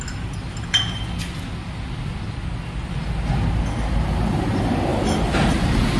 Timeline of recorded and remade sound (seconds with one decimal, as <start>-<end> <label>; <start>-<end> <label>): 0.0-6.0 recorded